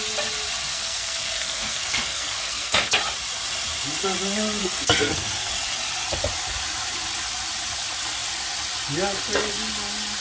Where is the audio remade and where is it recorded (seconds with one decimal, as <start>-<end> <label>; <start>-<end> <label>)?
0.0-0.7 recorded; 0.7-3.0 remade; 3.0-4.6 recorded; 4.6-5.5 remade; 5.5-10.2 recorded